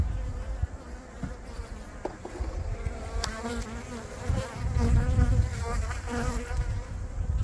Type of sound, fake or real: real